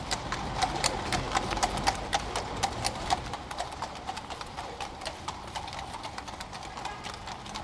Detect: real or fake real